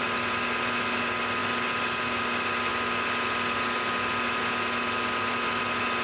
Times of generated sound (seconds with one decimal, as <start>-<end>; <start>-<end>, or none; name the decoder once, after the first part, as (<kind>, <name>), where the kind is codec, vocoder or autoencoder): none